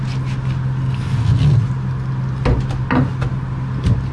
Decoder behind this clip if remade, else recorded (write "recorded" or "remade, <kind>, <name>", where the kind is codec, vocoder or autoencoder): recorded